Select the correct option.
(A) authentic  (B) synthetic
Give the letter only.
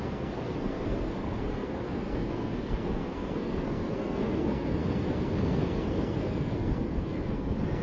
B